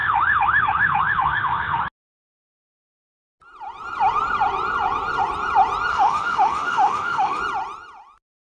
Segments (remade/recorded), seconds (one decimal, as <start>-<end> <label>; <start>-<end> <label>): 0.0-1.8 remade; 1.8-5.9 recorded; 5.9-7.4 remade; 7.4-8.5 recorded